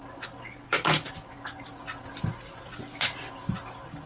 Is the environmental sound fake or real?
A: real